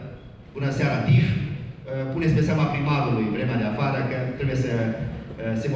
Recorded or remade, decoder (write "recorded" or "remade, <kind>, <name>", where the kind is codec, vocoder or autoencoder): recorded